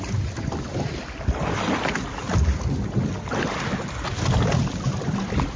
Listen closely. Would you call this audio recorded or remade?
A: recorded